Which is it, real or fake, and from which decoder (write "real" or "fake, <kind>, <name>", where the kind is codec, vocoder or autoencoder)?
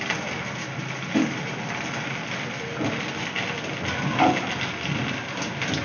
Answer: real